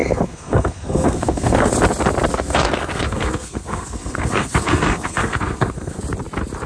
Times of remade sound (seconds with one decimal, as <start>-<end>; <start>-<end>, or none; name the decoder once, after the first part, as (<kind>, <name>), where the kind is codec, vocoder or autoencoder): 0.0-1.7 (codec, SNAC); 2.3-6.0